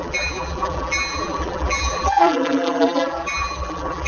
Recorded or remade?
remade